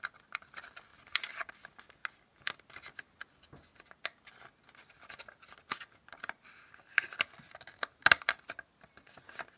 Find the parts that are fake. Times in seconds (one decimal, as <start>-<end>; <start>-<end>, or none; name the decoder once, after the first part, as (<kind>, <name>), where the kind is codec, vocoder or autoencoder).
none